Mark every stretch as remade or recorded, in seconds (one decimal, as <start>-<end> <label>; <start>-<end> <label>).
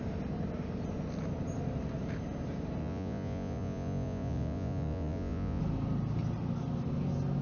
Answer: 0.0-2.8 recorded; 2.8-5.6 remade; 5.6-7.4 recorded